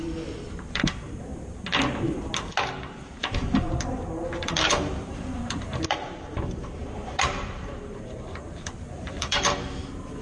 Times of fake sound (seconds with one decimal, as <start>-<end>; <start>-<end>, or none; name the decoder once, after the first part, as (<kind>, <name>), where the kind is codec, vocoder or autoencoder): 0.0-1.3 (vocoder, BigVGAN v2); 3.1-10.2